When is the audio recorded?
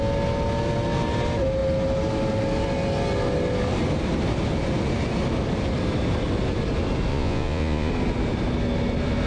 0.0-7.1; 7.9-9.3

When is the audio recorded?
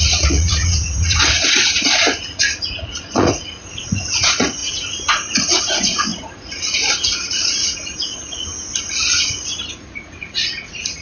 8.5-9.7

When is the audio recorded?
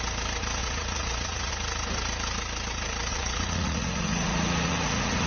0.0-0.6; 1.5-3.1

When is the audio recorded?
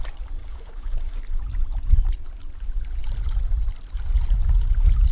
0.0-0.4; 1.2-5.1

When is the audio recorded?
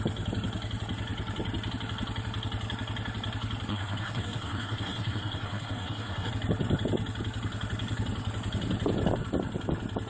0.0-3.7; 6.3-10.1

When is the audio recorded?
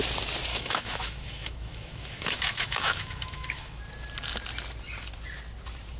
0.0-0.5; 3.8-6.0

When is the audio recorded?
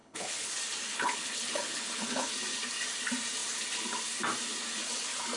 0.5-0.9; 2.3-5.4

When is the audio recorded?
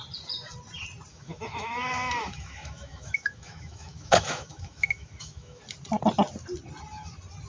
0.0-1.1; 5.6-7.5